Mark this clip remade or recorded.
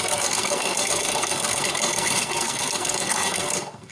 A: remade